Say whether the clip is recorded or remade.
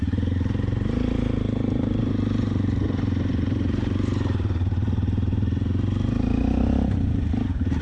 remade